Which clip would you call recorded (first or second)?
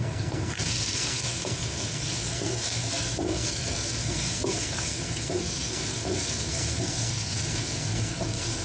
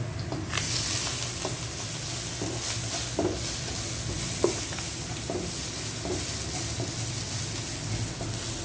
second